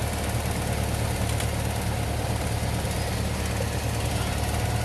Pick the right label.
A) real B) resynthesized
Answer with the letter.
A